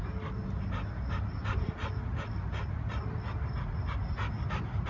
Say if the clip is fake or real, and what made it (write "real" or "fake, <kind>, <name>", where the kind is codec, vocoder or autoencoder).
real